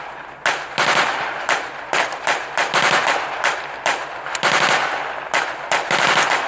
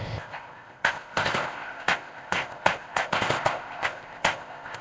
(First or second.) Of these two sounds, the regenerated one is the second